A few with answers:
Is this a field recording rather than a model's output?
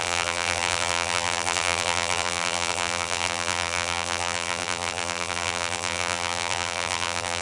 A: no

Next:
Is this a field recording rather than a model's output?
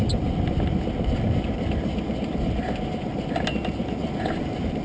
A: yes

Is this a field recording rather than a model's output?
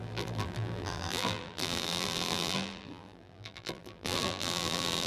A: no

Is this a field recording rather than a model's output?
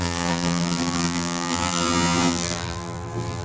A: no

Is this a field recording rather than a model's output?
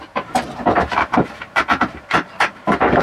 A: no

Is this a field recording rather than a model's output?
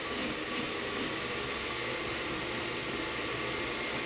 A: yes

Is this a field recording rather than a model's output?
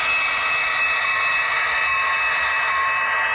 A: yes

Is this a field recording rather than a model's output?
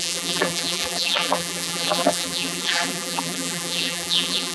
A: no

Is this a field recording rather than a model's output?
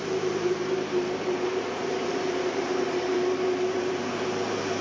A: no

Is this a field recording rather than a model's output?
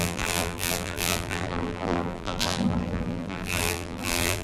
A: no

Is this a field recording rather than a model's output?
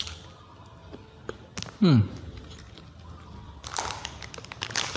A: yes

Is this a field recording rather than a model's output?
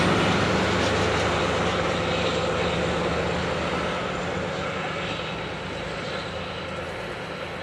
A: yes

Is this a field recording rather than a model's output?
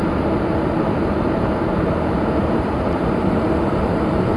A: no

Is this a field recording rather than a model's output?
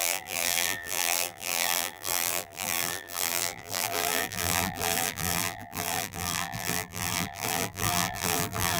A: no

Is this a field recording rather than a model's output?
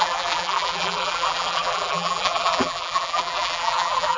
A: no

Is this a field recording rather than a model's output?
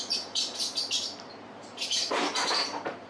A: no